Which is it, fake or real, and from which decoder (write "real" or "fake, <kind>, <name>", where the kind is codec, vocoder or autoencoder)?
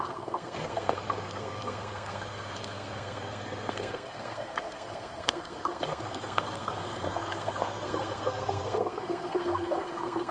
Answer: fake, codec, SNAC